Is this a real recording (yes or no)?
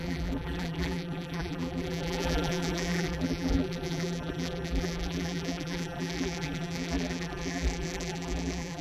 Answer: no